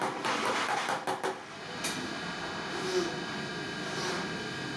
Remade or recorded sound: recorded